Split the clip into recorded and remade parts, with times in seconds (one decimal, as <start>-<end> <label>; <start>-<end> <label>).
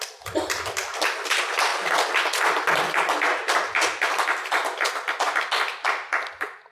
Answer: 0.0-6.7 recorded